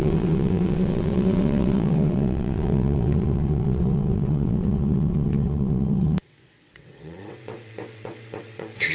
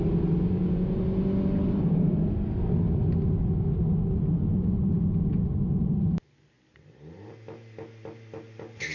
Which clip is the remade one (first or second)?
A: first